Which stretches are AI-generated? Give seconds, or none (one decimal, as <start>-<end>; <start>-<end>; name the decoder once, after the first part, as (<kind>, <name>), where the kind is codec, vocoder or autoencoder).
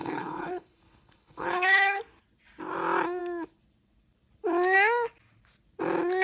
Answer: 0.0-2.0 (codec, HILCodec)